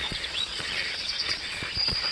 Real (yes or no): no